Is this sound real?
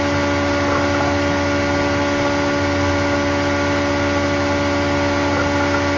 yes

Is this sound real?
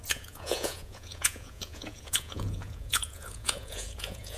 no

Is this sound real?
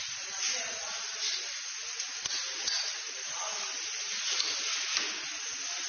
yes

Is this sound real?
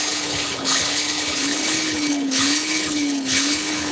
no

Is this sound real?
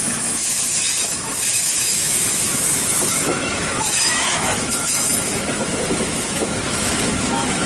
no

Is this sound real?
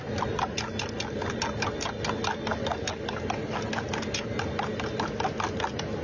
yes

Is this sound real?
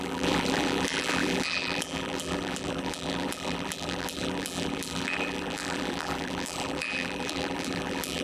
no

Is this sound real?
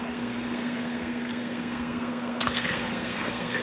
no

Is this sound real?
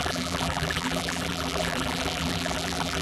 no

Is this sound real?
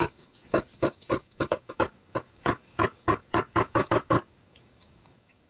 no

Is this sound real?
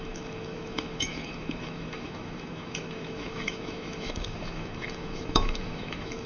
no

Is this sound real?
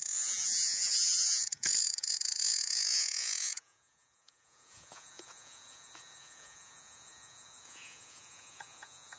no